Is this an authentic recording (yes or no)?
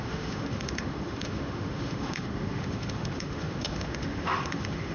no